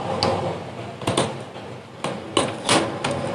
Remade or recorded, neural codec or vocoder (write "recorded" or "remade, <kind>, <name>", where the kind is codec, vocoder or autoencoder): recorded